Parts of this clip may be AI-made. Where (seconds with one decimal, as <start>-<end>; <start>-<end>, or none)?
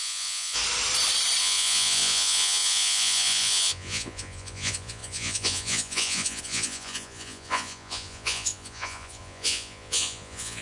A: 0.0-0.6; 1.4-10.6